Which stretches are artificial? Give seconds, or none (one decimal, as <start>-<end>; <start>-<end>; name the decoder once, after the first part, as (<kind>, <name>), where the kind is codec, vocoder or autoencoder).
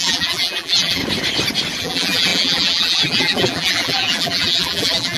0.0-1.0 (vocoder, BigVGAN v2); 1.8-5.2